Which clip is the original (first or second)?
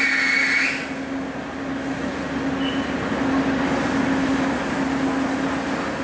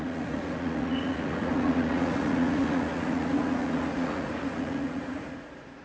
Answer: first